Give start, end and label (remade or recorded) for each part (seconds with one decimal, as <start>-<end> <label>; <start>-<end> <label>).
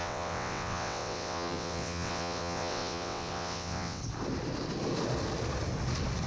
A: 0.0-4.0 remade; 4.0-6.3 recorded